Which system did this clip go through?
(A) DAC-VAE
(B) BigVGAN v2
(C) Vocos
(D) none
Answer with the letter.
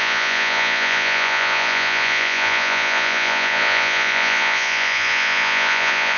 C